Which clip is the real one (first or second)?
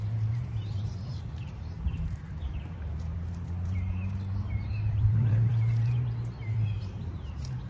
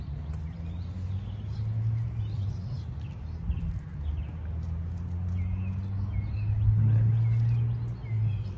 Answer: second